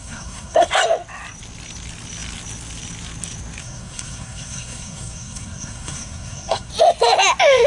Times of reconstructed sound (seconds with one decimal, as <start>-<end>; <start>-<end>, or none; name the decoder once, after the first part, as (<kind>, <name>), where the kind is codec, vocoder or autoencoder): 0.0-0.8 (codec, SNAC); 3.6-6.7